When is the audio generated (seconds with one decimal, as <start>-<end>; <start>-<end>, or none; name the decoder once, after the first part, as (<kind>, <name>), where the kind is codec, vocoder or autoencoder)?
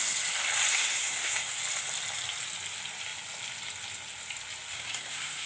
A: 0.7-1.6 (codec, SNAC); 4.7-5.5